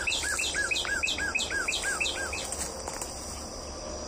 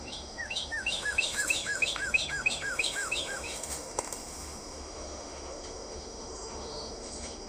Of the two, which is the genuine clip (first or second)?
first